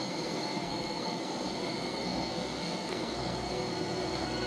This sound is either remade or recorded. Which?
remade